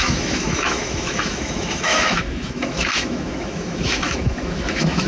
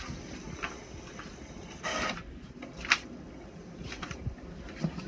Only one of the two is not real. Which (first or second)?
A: first